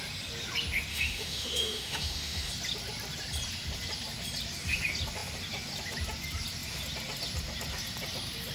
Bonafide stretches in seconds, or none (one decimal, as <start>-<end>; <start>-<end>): 0.0-0.9; 2.5-8.5